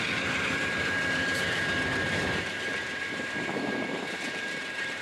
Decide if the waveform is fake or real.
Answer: fake